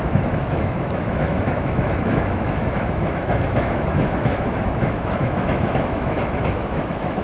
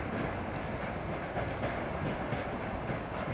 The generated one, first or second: first